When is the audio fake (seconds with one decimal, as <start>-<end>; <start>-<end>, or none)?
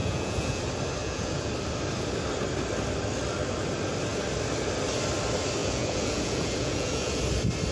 0.0-0.6; 1.0-1.5; 5.6-7.2